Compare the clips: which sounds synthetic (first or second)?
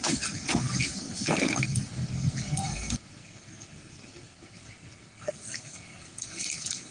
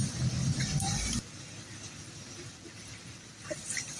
first